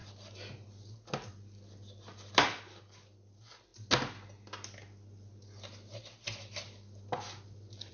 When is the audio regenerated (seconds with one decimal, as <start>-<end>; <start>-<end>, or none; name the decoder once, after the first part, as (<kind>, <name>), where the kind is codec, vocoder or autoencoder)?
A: none